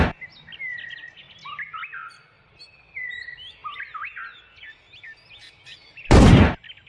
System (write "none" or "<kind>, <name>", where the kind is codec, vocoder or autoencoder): none